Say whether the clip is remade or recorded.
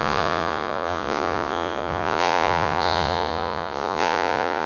remade